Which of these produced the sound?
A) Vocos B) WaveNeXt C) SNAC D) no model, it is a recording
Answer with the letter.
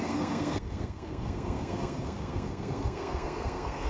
C